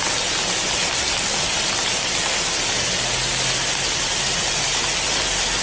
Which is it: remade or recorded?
recorded